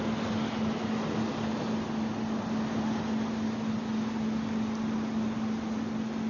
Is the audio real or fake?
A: real